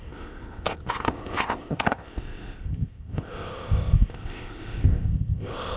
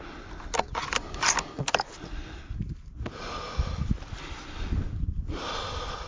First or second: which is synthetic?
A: first